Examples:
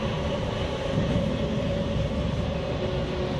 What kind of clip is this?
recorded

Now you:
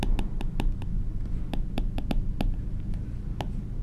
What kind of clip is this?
recorded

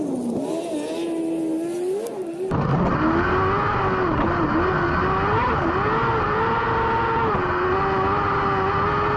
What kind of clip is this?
recorded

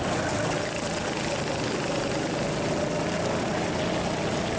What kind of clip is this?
recorded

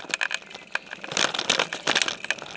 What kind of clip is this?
recorded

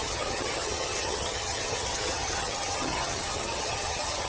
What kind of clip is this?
remade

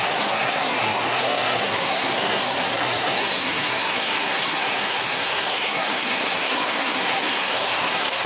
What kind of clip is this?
remade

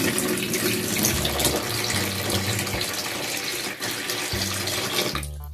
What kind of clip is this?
recorded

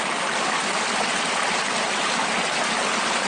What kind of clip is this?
recorded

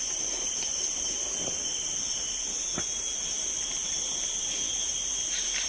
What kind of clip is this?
recorded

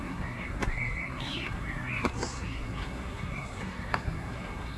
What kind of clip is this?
remade